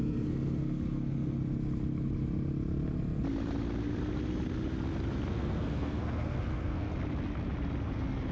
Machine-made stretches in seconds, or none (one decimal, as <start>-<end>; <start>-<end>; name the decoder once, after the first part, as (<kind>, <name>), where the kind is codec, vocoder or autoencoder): 0.0-1.4 (codec, SNAC); 5.3-6.9